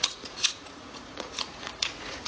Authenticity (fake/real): fake